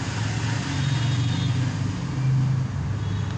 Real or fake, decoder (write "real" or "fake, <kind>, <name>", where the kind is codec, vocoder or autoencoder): real